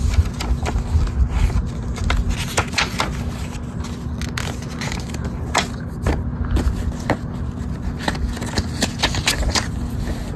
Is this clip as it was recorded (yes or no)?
yes